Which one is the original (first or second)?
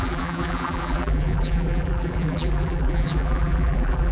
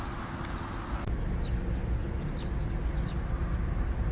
second